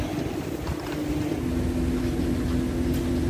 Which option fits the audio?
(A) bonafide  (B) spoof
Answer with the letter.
A